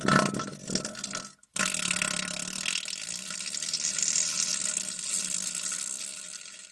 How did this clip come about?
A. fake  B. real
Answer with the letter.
B